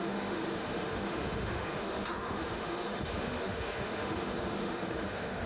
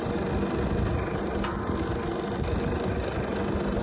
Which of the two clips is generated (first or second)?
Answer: first